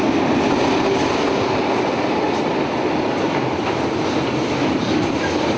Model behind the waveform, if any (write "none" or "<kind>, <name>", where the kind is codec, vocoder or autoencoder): none